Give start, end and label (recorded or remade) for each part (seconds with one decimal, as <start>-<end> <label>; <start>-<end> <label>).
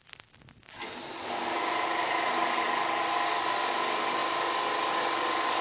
0.0-5.6 recorded